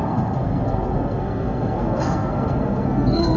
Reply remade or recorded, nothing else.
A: remade